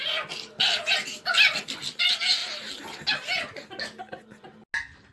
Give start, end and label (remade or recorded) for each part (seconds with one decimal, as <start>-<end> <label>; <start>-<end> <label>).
0.0-5.1 recorded

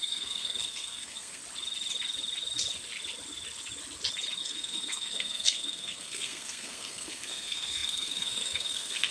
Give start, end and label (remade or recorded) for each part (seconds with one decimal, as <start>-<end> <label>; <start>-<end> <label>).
0.0-1.4 remade; 1.4-4.4 recorded; 4.4-9.1 remade

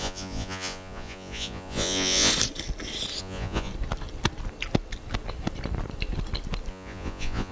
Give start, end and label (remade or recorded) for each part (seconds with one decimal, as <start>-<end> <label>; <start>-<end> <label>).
0.0-2.3 remade; 2.3-3.2 recorded; 3.2-3.7 remade; 3.7-6.7 recorded; 6.7-7.5 remade

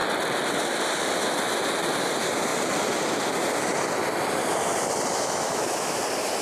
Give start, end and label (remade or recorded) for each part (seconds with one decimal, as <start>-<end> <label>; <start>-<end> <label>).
0.0-5.1 recorded; 5.1-6.0 remade; 6.0-6.4 recorded

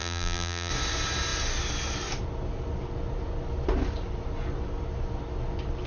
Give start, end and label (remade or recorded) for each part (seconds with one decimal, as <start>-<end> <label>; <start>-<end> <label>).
0.0-0.7 remade; 0.7-5.9 recorded

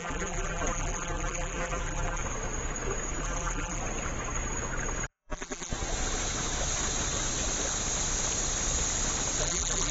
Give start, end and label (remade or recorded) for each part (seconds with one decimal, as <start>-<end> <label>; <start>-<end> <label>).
0.0-2.2 remade; 2.2-3.2 recorded; 3.2-3.8 remade; 3.8-5.1 recorded; 5.1-5.7 remade; 5.7-9.4 recorded; 9.4-9.9 remade

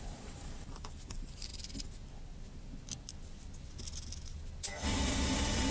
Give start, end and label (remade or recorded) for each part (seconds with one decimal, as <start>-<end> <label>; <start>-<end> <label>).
0.0-1.5 remade; 1.5-4.9 recorded; 4.9-5.7 remade

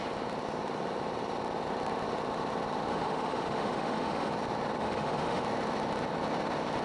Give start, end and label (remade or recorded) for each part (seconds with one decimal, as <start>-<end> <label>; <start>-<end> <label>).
0.0-2.9 recorded; 2.9-4.3 remade; 4.3-4.8 recorded; 4.8-5.4 remade; 5.4-6.8 recorded